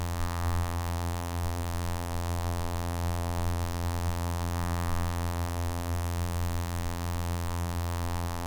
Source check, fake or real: fake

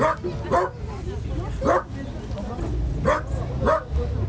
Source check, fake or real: real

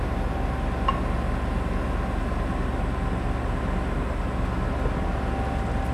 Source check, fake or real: real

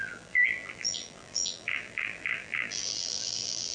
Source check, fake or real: fake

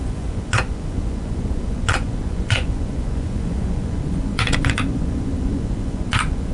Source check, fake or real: fake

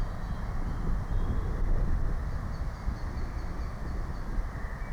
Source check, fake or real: real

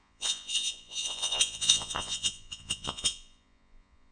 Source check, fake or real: fake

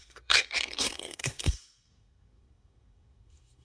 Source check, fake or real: fake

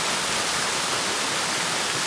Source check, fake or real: real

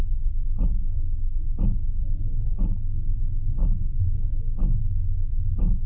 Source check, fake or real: real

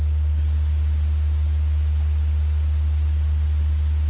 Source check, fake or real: real